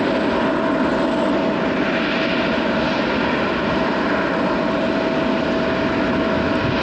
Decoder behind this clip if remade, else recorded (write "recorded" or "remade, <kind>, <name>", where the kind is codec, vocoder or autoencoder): recorded